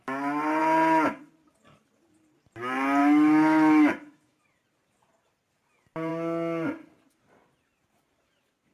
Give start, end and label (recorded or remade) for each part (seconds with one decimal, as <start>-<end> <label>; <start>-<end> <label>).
0.0-3.0 recorded; 3.0-4.4 remade; 4.4-8.7 recorded